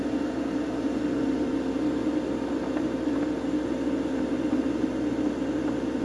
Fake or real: real